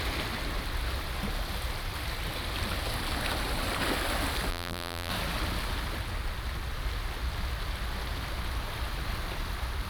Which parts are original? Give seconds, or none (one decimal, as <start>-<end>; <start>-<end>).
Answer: 0.0-4.5; 5.1-9.9